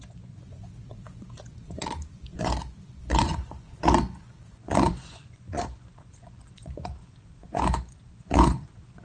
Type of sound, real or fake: fake